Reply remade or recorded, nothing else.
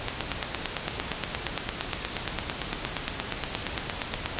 recorded